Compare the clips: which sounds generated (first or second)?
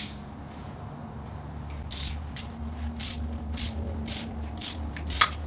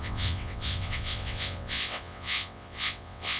second